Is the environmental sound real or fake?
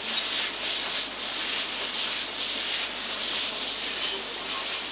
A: real